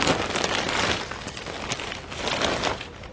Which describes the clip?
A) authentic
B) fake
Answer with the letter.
A